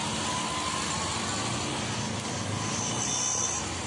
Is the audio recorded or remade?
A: recorded